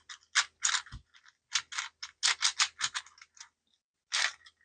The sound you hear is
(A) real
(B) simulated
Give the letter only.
A